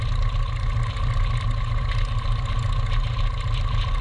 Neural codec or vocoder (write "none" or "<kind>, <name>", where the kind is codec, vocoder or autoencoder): none